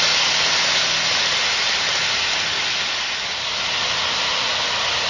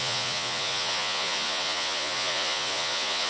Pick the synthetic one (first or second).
second